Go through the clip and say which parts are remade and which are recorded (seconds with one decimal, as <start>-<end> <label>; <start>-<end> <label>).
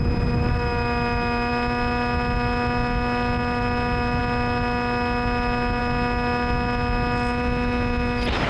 0.0-8.5 recorded